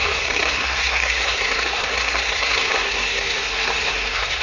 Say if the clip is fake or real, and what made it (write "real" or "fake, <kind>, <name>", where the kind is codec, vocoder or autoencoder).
fake, codec, SNAC